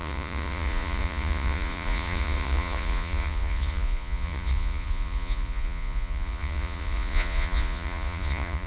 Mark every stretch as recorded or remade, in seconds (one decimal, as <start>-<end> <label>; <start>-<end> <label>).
0.0-8.7 remade